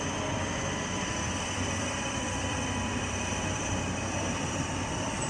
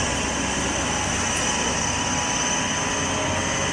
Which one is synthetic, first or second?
first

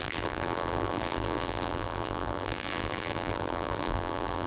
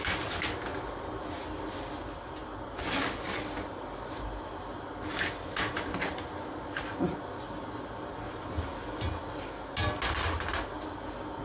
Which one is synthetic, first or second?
first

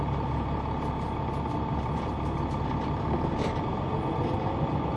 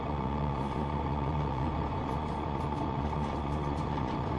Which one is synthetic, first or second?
second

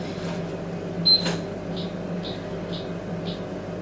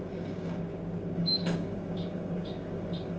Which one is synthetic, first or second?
second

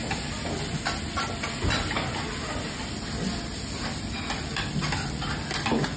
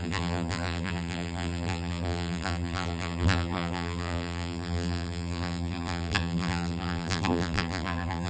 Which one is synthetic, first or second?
second